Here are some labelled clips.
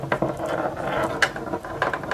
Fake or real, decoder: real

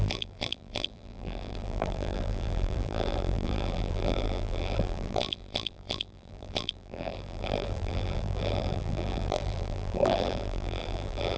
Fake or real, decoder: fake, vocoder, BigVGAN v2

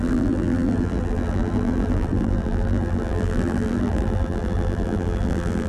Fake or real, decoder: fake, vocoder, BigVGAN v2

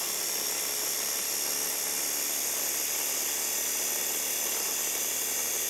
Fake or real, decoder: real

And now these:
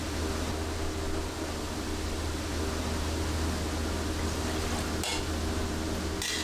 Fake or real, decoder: real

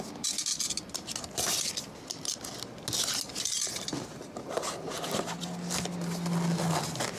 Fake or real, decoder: real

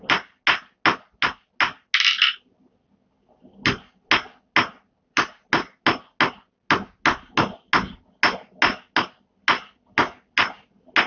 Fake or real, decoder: real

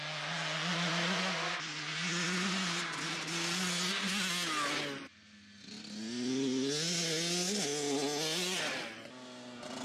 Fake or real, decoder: real